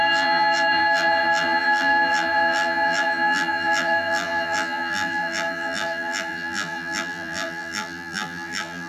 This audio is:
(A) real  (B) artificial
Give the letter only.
B